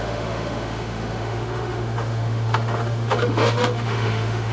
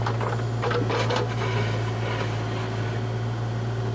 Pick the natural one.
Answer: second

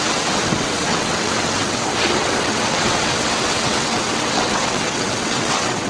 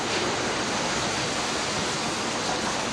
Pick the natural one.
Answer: second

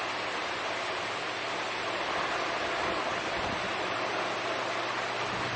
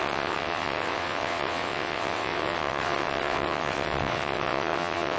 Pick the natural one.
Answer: first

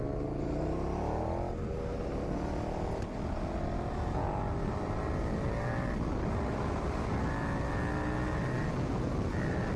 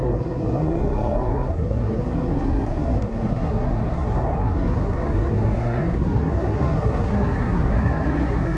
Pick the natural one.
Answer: first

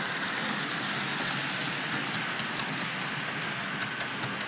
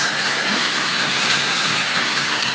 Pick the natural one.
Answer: first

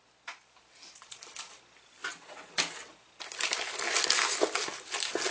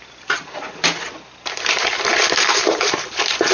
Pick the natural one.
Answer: first